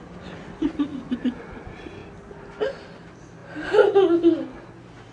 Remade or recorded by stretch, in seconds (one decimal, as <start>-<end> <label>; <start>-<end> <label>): 0.0-0.9 recorded; 0.9-1.5 remade; 1.5-5.1 recorded